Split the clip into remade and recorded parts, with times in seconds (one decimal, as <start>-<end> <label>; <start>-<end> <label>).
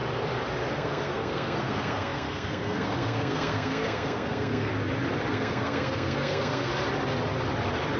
0.0-0.7 recorded; 0.7-4.7 remade; 4.7-5.3 recorded; 5.3-6.7 remade; 6.7-8.0 recorded